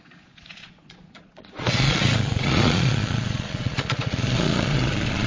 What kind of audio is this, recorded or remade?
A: remade